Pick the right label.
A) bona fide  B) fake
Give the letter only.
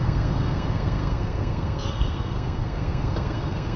B